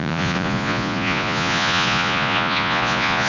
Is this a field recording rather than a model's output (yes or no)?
no